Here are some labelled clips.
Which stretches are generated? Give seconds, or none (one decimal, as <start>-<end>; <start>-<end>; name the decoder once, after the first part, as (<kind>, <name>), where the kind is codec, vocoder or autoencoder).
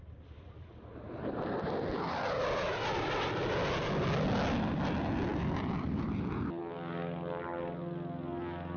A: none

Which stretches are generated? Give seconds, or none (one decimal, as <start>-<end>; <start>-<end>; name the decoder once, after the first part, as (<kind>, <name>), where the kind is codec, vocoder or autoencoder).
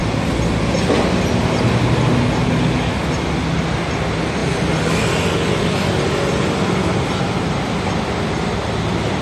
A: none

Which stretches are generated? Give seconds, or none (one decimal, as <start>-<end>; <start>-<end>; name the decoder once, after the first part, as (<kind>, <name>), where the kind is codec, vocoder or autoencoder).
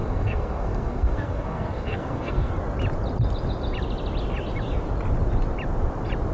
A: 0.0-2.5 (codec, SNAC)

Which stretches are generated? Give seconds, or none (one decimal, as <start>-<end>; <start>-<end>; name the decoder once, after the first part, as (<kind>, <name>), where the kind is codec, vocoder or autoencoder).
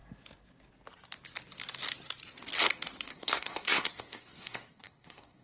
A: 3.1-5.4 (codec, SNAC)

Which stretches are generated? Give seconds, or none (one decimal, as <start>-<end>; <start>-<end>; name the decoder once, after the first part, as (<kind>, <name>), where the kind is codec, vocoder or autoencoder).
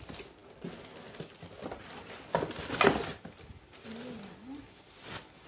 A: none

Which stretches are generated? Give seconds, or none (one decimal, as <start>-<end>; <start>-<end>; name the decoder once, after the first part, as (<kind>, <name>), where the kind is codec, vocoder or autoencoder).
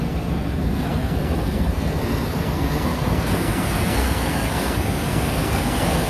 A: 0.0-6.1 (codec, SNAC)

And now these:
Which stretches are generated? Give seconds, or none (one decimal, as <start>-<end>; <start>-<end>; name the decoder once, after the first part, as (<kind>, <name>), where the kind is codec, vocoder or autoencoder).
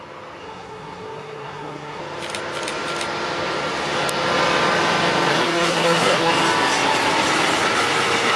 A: 0.4-2.0 (codec, SNAC); 5.3-6.3